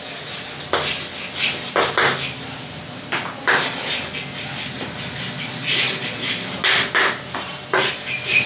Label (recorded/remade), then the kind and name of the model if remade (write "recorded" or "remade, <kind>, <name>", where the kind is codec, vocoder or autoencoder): recorded